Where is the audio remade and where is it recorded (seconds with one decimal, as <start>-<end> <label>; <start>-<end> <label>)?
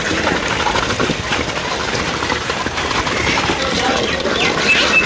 0.0-1.3 recorded; 1.3-3.0 remade; 3.0-5.1 recorded